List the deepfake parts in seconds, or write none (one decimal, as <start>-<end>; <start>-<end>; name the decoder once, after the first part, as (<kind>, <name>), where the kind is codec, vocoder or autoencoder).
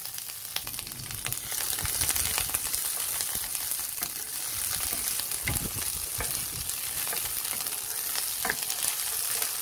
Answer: none